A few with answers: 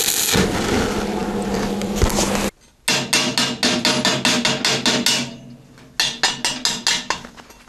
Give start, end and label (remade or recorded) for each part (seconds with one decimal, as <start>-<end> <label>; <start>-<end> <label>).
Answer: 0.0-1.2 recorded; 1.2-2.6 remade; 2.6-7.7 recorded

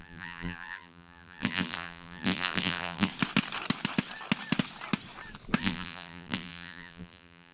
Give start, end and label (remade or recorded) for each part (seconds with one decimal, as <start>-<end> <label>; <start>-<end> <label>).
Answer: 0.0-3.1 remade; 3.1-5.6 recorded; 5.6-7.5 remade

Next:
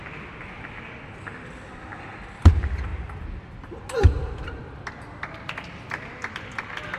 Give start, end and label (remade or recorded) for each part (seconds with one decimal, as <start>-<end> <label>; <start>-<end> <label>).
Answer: 0.0-7.0 recorded

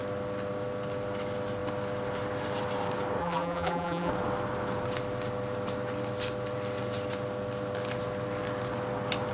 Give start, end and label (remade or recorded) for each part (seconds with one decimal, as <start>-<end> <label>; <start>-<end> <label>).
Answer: 0.0-3.2 recorded; 3.2-4.1 remade; 4.1-9.3 recorded

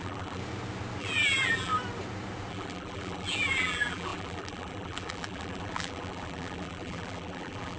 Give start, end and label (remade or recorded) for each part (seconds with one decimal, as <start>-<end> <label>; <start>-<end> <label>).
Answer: 0.0-0.4 remade; 0.4-1.0 recorded; 1.0-1.7 remade; 1.7-2.5 recorded; 2.5-7.8 remade